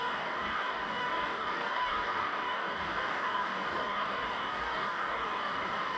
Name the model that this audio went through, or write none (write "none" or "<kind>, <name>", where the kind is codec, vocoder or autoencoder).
codec, DAC